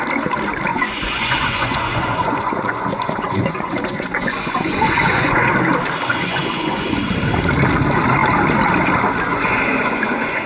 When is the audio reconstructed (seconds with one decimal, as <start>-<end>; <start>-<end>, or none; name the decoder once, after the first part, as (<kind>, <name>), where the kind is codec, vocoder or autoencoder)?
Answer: 0.7-5.5 (vocoder, Vocos); 6.1-7.1; 9.3-10.5